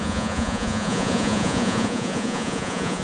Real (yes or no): no